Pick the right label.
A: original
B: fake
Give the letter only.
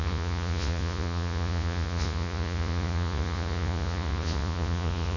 B